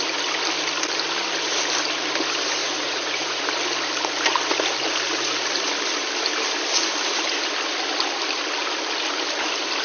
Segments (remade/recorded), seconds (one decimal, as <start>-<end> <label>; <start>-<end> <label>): 0.0-2.6 recorded; 2.6-3.4 remade; 3.4-9.8 recorded